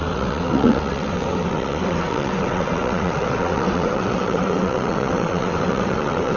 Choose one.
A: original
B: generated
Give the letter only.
B